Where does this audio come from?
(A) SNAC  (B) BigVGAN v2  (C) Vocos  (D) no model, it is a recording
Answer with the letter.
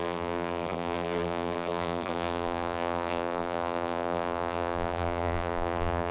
B